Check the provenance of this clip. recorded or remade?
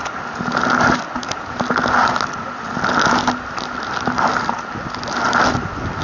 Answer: recorded